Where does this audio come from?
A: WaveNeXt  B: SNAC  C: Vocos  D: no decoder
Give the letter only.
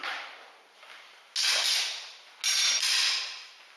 D